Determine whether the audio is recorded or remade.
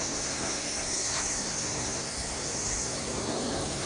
remade